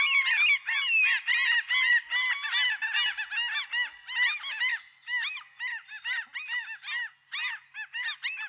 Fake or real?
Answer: real